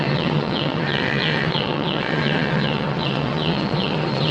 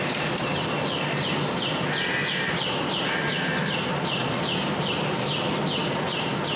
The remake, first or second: first